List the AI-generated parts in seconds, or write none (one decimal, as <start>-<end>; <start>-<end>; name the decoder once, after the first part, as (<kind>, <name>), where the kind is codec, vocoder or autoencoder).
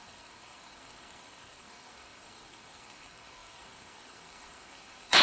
0.0-5.2 (codec, SNAC)